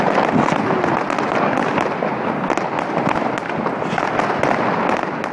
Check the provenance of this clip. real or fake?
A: real